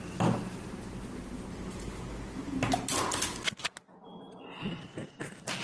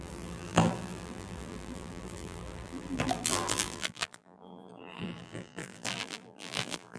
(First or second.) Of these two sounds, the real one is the first